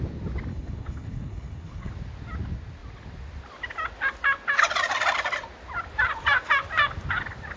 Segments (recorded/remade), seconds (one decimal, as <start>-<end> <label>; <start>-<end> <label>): 0.0-0.5 recorded; 0.5-1.9 remade; 1.9-7.6 recorded